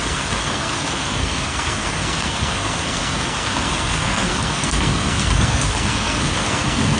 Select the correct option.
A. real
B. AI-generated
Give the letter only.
B